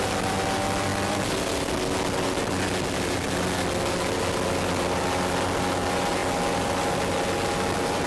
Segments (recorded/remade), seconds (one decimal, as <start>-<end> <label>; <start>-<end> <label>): 0.0-8.1 recorded